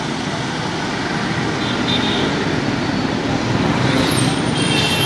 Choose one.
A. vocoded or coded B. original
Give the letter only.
A